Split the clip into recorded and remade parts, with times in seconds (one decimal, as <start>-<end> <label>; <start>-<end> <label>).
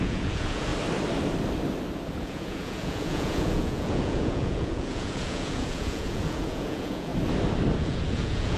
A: 0.0-0.7 remade; 0.7-2.2 recorded; 2.2-7.1 remade; 7.1-7.8 recorded; 7.8-8.6 remade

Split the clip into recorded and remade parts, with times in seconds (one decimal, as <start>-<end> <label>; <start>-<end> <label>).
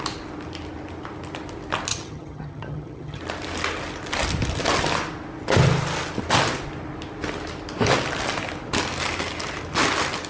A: 0.0-1.9 recorded; 1.9-3.2 remade; 3.2-10.3 recorded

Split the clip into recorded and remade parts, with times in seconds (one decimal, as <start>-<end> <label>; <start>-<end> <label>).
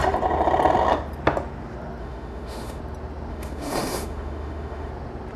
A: 0.0-2.0 recorded; 2.0-2.8 remade; 2.8-3.3 recorded; 3.3-4.9 remade; 4.9-5.4 recorded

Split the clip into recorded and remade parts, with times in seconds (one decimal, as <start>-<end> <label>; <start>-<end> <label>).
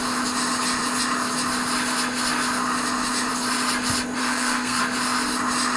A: 0.0-4.2 recorded; 4.2-4.8 remade; 4.8-5.8 recorded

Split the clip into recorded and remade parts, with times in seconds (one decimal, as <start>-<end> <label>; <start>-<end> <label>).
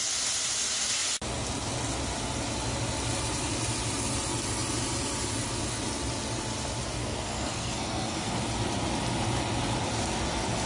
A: 0.0-7.0 recorded; 7.0-8.4 remade; 8.4-10.7 recorded